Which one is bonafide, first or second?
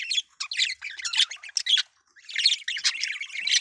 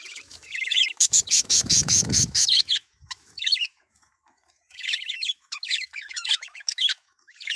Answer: first